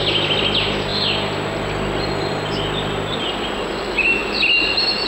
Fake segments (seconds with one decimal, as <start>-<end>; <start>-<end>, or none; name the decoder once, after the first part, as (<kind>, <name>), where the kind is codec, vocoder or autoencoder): none